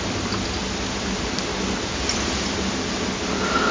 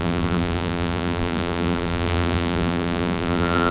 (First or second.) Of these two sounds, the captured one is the first